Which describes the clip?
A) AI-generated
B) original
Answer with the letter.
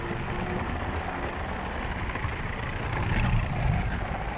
B